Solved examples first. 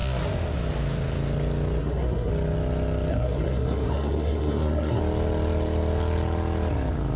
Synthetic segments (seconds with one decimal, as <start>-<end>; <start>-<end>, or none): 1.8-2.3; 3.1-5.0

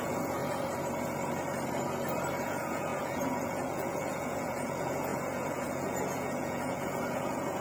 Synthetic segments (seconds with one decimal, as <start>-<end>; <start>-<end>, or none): 0.0-0.4; 2.4-7.6

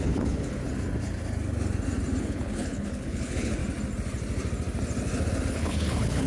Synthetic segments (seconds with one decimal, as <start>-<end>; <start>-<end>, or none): 0.0-0.6; 2.2-3.6; 5.5-6.3

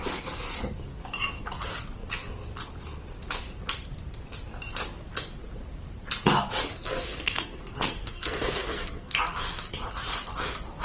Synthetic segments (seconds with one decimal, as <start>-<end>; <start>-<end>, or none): 6.7-9.7

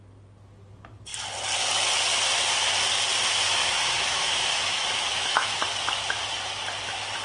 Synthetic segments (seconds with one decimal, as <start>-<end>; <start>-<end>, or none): 3.6-5.5